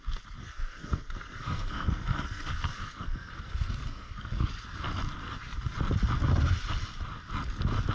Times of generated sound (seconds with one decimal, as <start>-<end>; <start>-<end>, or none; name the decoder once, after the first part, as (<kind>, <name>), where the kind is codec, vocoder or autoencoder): 0.4-4.5 (codec, SNAC)